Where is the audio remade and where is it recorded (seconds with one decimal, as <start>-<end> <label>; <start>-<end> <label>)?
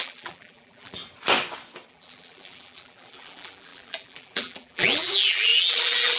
0.0-1.0 remade; 1.0-1.9 recorded; 1.9-6.2 remade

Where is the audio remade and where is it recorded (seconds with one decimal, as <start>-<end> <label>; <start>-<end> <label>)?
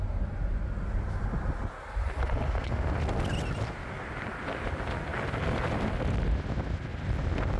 0.0-6.9 recorded; 6.9-7.6 remade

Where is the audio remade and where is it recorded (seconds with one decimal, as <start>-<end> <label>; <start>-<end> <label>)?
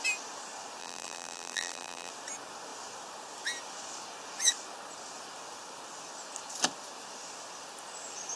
0.0-0.8 recorded; 0.8-2.1 remade; 2.1-8.4 recorded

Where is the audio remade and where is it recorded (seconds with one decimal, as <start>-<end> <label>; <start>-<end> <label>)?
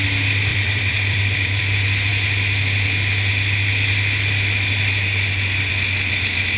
0.0-0.5 recorded; 0.5-1.6 remade; 1.6-6.6 recorded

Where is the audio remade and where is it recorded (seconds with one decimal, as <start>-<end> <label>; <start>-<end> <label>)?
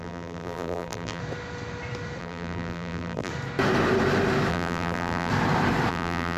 0.0-1.2 remade; 1.2-2.2 recorded; 2.2-3.3 remade; 3.3-4.5 recorded; 4.5-5.3 remade; 5.3-5.9 recorded; 5.9-6.4 remade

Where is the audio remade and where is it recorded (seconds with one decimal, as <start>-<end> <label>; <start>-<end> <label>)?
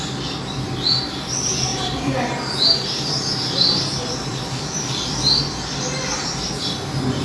0.0-1.7 recorded; 1.7-5.4 remade; 5.4-7.2 recorded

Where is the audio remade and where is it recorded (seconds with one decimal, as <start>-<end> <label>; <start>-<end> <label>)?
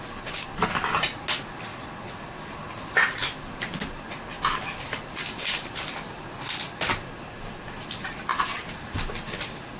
0.0-8.3 recorded; 8.3-8.8 remade; 8.8-9.8 recorded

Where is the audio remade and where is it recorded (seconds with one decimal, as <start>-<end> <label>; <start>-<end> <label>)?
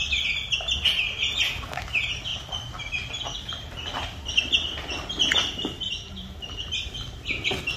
0.0-2.3 recorded; 2.3-6.7 remade; 6.7-7.8 recorded